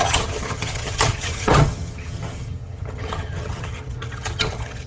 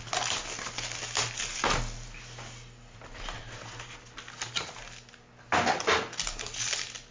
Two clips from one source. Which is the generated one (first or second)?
first